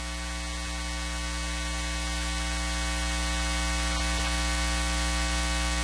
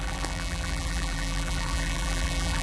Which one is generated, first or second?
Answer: second